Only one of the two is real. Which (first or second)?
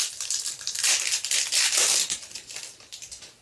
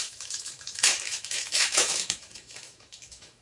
first